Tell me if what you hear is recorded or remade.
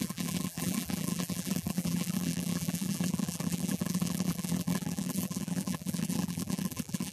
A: remade